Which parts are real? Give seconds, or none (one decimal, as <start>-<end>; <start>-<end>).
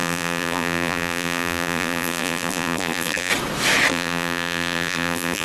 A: 3.3-3.9